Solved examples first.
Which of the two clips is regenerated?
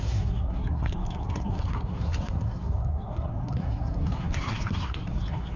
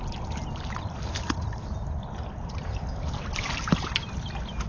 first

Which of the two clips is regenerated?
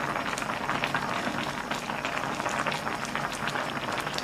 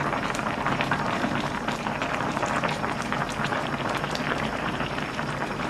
second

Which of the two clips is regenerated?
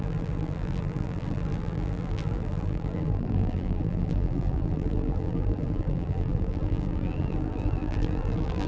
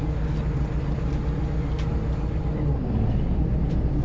first